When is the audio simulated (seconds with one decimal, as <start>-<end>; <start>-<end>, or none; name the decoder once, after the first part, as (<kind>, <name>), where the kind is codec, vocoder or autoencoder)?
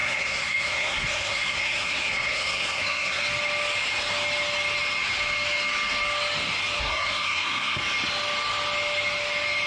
0.0-3.2 (codec, SNAC); 6.8-7.8